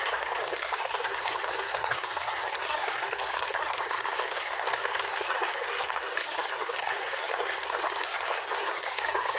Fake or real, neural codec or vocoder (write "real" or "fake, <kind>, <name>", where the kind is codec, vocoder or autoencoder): fake, codec, SNAC